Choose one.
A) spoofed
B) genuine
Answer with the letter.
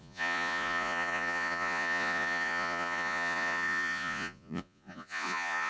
A